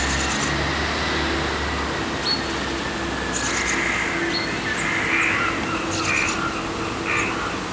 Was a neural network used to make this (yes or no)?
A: no